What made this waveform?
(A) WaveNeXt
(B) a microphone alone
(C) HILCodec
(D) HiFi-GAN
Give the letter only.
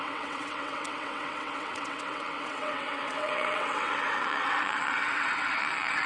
A